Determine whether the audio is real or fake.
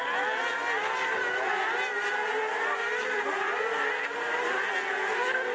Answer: real